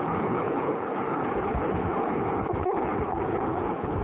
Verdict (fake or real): fake